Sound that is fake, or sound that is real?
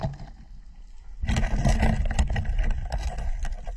real